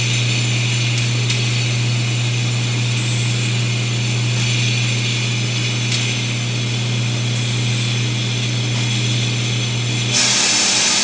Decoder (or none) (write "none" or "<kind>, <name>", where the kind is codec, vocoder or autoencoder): none